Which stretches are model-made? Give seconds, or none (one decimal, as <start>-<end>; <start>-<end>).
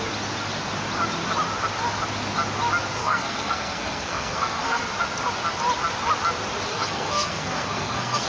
3.0-4.8; 6.7-8.3